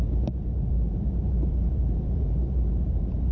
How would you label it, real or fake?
fake